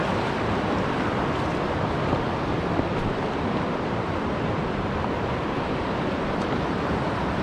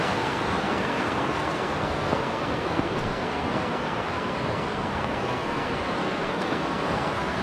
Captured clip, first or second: first